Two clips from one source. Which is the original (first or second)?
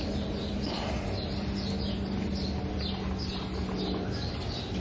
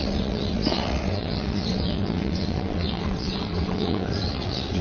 first